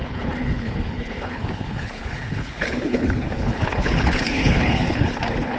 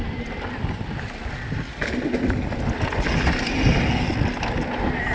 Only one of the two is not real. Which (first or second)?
first